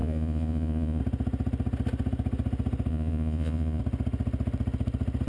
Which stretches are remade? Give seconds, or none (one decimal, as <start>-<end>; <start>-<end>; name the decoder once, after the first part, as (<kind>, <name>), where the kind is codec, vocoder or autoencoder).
0.0-1.0 (vocoder, Vocos); 2.9-3.8